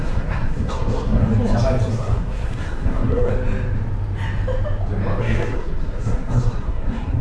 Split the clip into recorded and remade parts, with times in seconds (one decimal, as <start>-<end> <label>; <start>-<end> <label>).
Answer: 0.0-1.3 remade; 1.3-1.9 recorded; 1.9-3.3 remade; 3.3-5.2 recorded; 5.2-7.2 remade

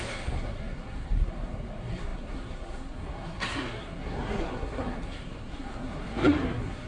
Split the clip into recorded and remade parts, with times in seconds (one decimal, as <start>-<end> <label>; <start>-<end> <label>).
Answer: 0.0-6.9 remade